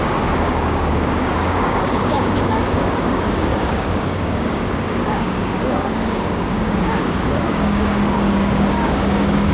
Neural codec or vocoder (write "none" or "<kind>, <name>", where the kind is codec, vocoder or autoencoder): codec, DAC